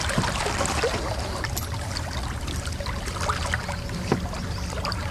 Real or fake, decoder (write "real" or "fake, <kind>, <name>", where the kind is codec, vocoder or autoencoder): real